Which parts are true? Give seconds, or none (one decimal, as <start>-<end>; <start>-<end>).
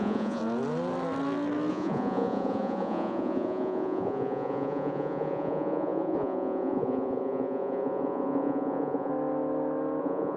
0.4-1.7; 9.1-10.0